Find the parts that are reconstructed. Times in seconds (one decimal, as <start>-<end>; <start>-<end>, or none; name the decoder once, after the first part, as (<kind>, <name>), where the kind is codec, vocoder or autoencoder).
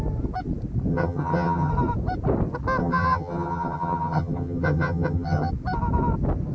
0.9-1.7 (vocoder, HiFi-GAN); 2.8-5.5